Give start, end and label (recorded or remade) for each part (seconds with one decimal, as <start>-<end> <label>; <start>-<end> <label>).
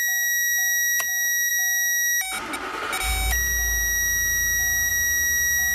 0.0-5.7 recorded